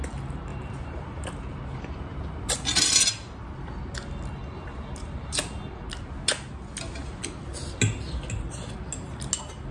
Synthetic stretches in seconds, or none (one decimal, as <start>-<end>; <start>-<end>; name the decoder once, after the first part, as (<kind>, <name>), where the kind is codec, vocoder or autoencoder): 0.5-2.5 (vocoder, BigVGAN v2)